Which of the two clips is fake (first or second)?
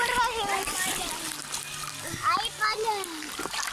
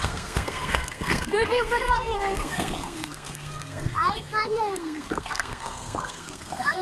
second